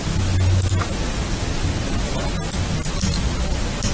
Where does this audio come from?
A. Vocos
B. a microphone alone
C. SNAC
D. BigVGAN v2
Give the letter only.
B